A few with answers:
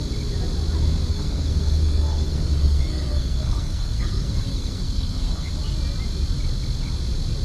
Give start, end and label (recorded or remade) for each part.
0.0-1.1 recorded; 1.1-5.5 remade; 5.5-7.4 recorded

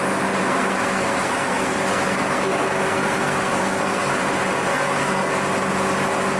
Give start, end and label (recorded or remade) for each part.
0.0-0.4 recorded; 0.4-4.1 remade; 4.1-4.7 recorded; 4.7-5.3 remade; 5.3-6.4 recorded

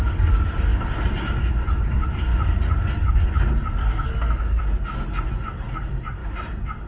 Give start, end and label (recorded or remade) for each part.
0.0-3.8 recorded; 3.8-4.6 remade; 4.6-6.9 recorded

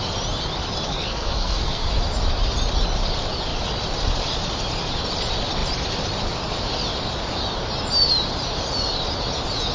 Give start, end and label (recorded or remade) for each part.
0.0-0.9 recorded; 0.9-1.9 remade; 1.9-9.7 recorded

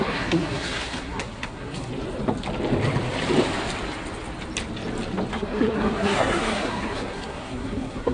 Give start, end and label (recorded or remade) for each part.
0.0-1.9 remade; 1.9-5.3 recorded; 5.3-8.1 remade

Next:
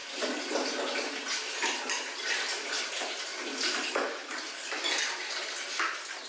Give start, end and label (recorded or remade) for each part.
0.0-6.3 recorded